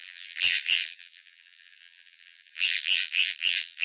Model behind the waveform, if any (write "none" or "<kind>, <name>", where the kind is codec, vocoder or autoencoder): vocoder, BigVGAN v2